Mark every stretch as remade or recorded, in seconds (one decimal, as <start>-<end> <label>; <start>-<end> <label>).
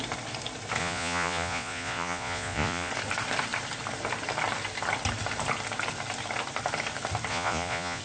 0.0-0.8 recorded; 0.8-2.9 remade; 2.9-7.3 recorded; 7.3-8.0 remade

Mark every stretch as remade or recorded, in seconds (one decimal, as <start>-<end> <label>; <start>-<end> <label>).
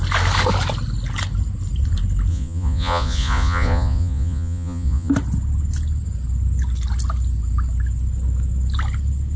0.0-2.3 recorded; 2.3-5.1 remade; 5.1-9.4 recorded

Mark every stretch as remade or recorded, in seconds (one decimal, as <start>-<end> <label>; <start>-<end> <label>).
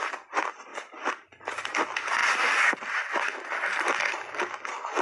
0.0-5.0 recorded